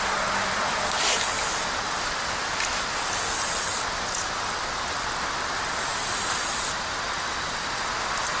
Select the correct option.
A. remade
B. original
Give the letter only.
B